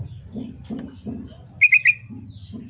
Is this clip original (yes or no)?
yes